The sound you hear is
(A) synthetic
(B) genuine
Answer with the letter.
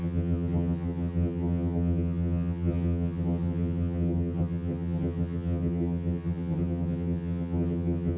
A